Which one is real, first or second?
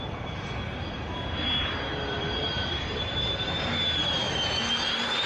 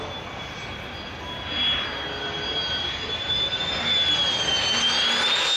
second